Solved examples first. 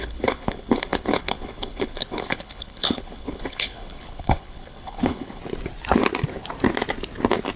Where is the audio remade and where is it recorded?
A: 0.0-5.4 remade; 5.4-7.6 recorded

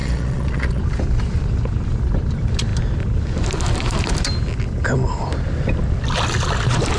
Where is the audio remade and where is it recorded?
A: 0.0-0.8 remade; 0.8-7.0 recorded